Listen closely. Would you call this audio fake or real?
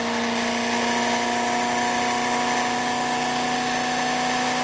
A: real